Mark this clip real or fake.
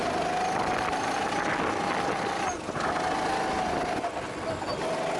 real